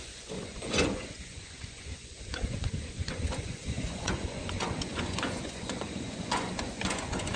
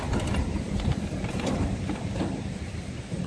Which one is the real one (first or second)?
second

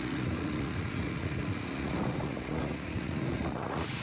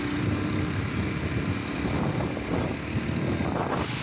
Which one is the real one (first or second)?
second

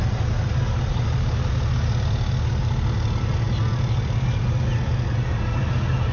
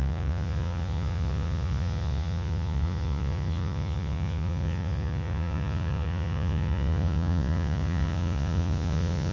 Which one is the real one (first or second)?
first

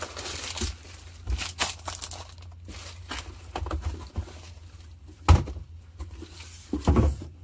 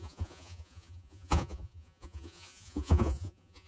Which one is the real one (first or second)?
first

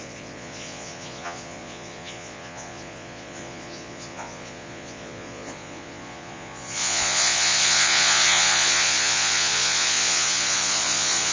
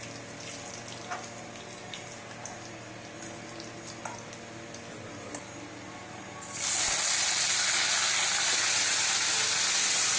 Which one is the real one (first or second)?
second